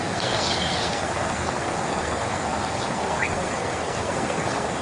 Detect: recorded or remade remade